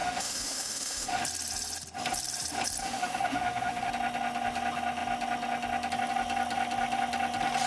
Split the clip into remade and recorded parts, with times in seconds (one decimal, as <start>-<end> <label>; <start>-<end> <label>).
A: 0.0-1.2 remade; 1.2-2.8 recorded; 2.8-3.9 remade; 3.9-7.7 recorded